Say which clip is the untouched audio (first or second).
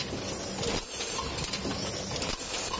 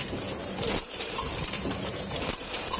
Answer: first